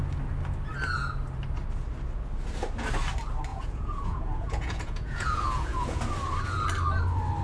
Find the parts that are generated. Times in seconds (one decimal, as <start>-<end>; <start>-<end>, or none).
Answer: 3.5-6.0